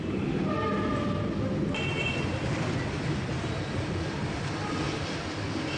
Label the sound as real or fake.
real